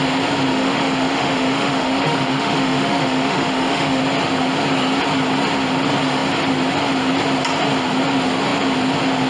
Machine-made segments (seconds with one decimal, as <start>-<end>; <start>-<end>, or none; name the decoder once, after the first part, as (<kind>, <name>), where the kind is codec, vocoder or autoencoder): 0.5-4.0 (autoencoder, DAC-VAE)